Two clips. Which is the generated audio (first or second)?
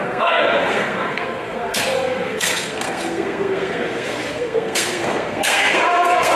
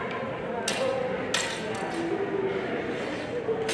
first